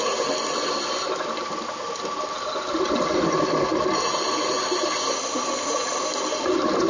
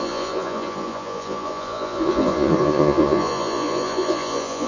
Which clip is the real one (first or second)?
first